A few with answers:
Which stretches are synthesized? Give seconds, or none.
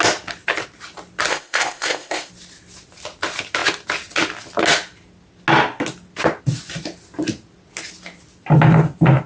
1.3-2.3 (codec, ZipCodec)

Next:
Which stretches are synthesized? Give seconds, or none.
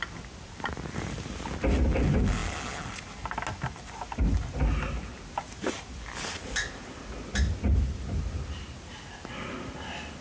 none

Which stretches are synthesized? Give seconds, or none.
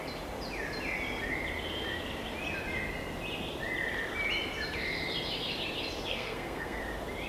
6.1-6.8 (codec, SNAC)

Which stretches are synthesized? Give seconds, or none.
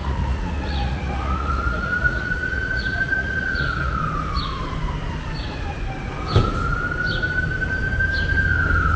0.0-4.0 (vocoder, Vocos)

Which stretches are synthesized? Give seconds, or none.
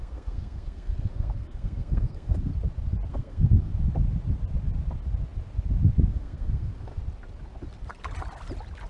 0.0-2.5 (codec, SNAC); 3.1-3.7; 6.1-7.0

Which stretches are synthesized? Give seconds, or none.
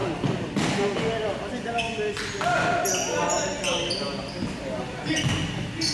none